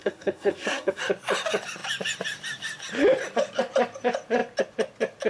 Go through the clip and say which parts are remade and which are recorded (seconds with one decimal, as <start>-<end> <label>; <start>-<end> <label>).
0.0-1.0 remade; 1.0-5.3 recorded